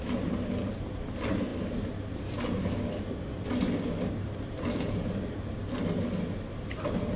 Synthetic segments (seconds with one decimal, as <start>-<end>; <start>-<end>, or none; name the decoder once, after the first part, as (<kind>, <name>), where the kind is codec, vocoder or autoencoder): none